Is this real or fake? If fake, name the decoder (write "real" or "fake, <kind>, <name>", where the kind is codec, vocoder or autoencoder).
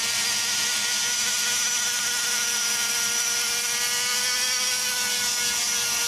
real